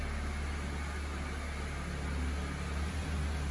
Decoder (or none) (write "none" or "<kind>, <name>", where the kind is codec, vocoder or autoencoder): none